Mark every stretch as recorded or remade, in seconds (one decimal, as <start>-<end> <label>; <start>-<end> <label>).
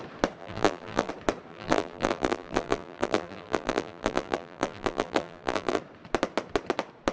0.0-0.4 recorded; 0.4-1.1 remade; 1.1-1.5 recorded; 1.5-5.8 remade; 5.8-7.1 recorded